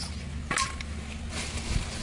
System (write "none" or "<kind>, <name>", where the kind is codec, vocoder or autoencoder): none